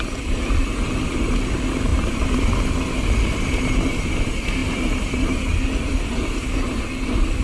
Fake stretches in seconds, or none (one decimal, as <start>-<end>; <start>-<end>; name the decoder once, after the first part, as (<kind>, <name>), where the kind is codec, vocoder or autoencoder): none